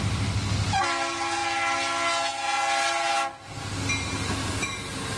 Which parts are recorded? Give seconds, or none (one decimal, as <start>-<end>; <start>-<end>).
0.0-5.2